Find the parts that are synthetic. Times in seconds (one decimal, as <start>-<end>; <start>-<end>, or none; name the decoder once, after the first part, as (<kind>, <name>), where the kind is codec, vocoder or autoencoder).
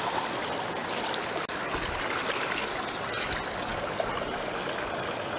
3.7-4.5 (vocoder, BigVGAN v2)